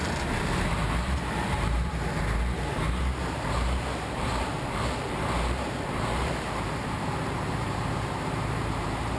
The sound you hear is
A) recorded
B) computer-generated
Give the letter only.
B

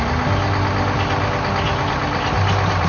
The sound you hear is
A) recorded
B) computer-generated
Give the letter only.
A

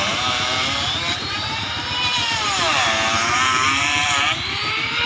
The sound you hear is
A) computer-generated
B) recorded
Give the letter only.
A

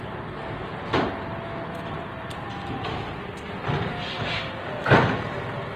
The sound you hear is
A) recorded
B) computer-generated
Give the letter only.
A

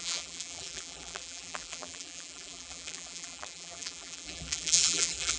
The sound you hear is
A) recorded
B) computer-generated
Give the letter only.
B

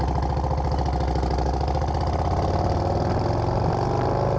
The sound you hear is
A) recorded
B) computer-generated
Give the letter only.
A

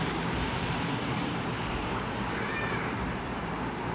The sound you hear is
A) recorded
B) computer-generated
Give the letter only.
B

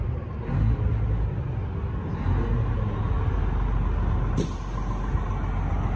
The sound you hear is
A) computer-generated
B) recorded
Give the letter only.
B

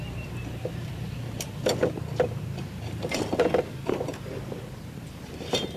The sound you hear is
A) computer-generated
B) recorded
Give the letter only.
A